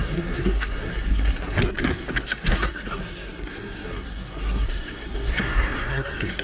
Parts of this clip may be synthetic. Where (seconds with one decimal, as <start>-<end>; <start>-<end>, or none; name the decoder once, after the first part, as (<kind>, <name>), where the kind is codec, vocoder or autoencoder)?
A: 0.0-6.4 (codec, SNAC)